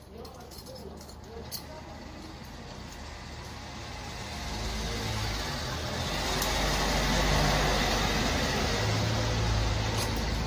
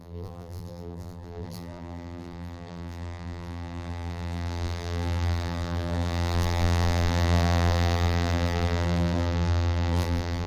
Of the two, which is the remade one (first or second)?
second